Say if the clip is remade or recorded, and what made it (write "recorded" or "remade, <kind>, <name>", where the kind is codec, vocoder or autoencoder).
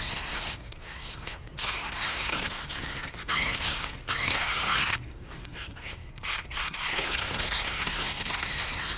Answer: remade, codec, SNAC